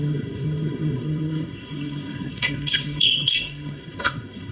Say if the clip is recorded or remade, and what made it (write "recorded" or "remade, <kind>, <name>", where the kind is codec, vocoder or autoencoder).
remade, codec, SNAC